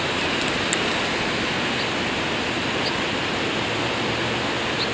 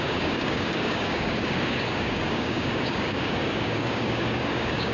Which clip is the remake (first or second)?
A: second